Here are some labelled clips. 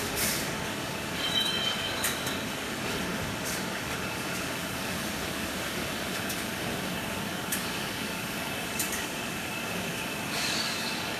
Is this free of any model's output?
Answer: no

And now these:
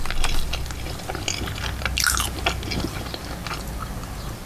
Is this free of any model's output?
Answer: yes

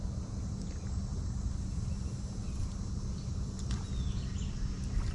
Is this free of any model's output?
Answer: yes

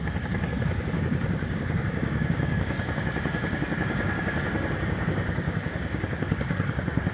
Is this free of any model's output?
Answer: no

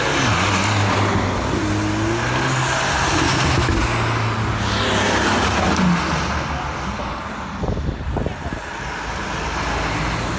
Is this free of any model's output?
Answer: yes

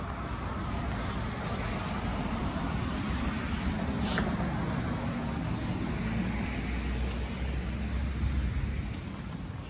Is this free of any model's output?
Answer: yes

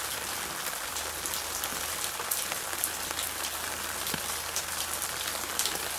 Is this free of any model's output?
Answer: yes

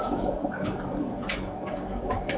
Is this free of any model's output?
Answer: no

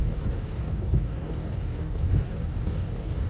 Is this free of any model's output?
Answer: no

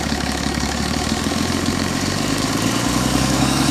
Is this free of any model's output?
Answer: no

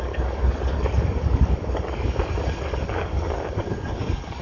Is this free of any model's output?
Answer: no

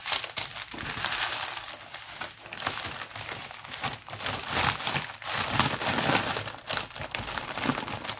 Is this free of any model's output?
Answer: yes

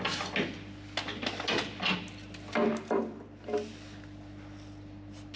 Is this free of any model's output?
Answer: yes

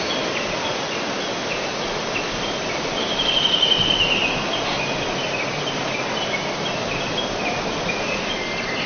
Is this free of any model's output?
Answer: yes